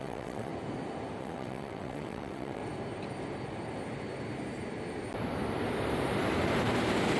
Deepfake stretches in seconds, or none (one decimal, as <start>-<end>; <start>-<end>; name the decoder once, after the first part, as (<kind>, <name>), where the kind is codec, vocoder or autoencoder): 0.0-0.5 (vocoder, WaveNeXt); 1.2-2.6